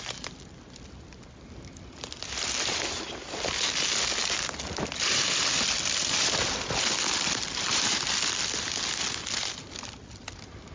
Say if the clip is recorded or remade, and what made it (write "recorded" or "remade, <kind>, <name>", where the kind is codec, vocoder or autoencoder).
recorded